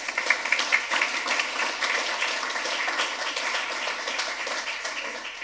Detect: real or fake real